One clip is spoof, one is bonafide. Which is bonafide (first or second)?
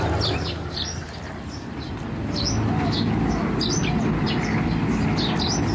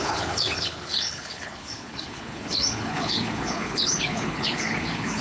first